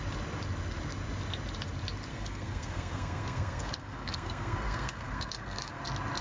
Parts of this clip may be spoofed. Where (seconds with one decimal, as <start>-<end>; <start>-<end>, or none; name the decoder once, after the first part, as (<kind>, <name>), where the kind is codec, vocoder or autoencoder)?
2.1-5.8 (codec, SNAC)